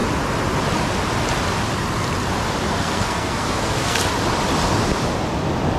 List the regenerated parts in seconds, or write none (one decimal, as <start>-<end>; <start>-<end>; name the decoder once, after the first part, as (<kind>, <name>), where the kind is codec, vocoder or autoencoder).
2.7-4.0 (codec, SNAC)